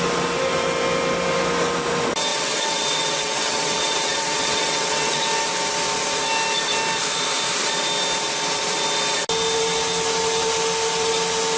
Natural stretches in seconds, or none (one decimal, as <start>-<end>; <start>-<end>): 0.0-2.3; 5.2-11.6